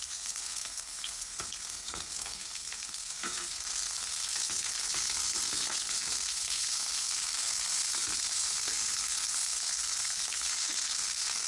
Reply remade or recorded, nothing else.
remade